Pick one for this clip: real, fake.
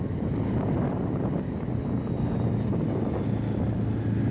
real